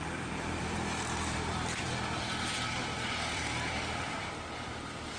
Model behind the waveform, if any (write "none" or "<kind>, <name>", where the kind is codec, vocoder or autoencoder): vocoder, BigVGAN v2